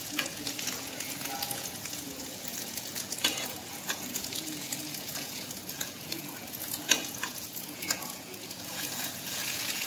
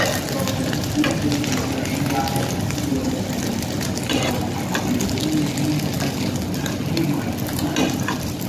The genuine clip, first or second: second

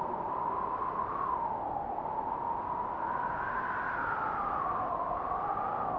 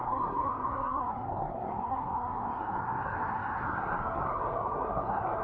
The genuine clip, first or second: first